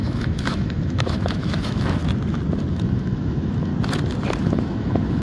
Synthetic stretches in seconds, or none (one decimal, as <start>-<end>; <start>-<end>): 0.0-2.0; 2.7-3.7; 4.4-5.2